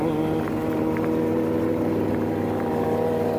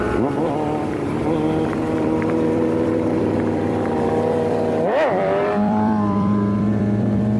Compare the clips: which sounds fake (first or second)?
second